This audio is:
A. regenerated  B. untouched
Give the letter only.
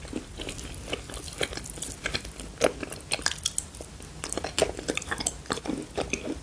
B